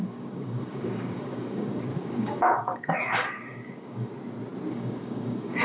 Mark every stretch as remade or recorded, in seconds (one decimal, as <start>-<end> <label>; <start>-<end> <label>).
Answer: 0.0-4.1 remade; 4.1-4.7 recorded; 4.7-5.6 remade